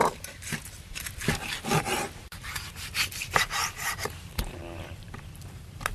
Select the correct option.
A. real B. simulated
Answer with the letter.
B